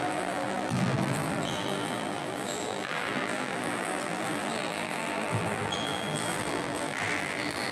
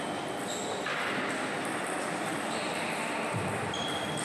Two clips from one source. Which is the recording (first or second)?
second